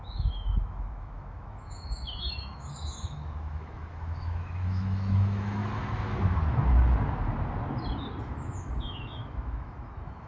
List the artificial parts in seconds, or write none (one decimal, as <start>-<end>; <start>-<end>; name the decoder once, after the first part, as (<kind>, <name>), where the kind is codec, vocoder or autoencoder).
0.0-5.6 (autoencoder, DAC-VAE); 8.2-10.3